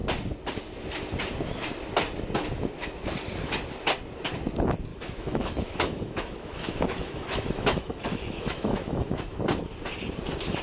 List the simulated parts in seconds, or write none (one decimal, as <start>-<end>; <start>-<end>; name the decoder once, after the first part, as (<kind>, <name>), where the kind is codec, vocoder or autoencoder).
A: 4.9-9.4 (autoencoder, DAC-VAE)

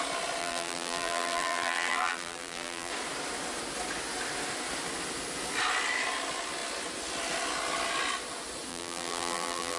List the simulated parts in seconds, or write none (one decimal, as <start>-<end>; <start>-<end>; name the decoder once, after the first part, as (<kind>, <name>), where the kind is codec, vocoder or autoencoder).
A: 0.4-2.9 (vocoder, BigVGAN v2); 8.7-9.8

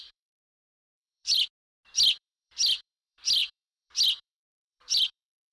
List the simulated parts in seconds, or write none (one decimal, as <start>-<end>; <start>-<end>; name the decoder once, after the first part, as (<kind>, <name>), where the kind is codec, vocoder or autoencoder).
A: 0.0-1.4 (vocoder, BigVGAN v2); 2.2-5.5

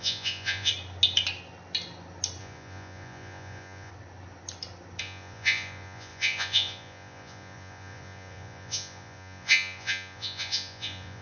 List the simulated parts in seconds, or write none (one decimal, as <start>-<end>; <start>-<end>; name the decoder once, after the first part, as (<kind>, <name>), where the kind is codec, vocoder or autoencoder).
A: 0.0-0.7 (vocoder, Vocos); 2.4-3.9; 5.0-11.2

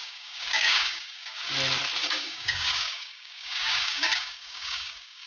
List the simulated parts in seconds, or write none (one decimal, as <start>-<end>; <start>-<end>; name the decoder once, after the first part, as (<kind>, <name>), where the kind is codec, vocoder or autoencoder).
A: 0.0-1.5 (codec, DAC); 2.0-5.3

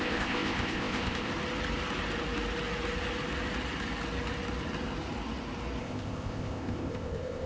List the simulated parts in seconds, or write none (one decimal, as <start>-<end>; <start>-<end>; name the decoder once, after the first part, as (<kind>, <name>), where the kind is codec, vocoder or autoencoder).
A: 0.0-1.3 (codec, ZipCodec); 5.8-7.5